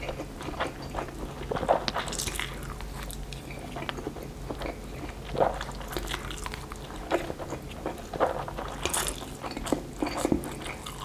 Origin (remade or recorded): recorded